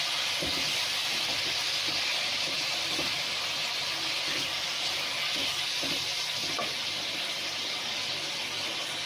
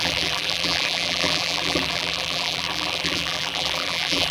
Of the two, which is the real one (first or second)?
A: first